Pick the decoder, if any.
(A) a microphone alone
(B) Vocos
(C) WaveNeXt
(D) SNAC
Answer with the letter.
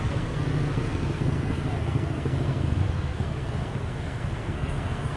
D